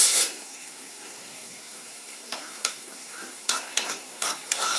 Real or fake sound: fake